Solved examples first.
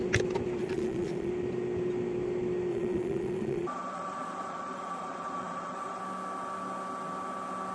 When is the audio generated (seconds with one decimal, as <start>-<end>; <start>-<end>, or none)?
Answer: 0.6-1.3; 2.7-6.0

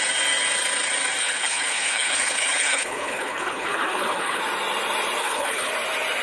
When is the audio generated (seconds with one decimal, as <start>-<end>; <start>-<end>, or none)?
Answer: 1.2-4.4; 5.2-5.7

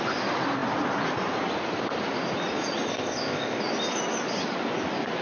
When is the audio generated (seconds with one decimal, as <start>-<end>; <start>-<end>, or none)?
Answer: 2.9-3.6